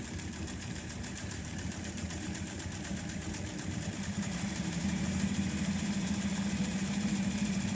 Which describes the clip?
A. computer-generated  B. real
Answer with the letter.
A